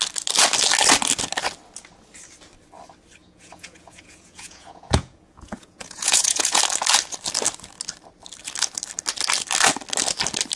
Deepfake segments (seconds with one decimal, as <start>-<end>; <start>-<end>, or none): 3.2-6.6